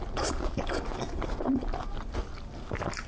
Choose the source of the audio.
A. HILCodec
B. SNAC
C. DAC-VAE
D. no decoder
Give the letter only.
D